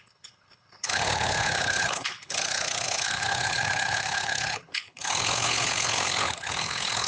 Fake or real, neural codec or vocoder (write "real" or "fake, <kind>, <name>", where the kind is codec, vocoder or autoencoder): fake, codec, HILCodec